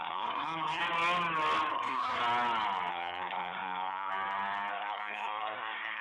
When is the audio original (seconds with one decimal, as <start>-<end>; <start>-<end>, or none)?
0.8-1.7; 2.2-2.9; 4.1-4.7

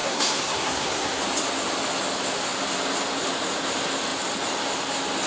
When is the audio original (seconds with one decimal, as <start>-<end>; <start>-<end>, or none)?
1.2-5.3

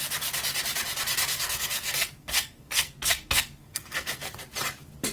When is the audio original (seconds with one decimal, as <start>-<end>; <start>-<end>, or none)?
0.0-1.3; 4.4-5.1

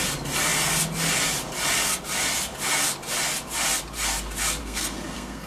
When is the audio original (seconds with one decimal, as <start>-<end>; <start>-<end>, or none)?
0.0-4.6